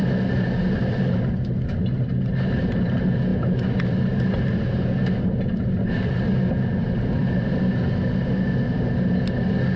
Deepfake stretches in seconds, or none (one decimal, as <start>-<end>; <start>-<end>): 6.8-7.5